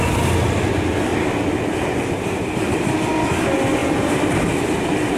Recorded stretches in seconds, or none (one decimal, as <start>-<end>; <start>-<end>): 0.0-3.8; 4.5-5.2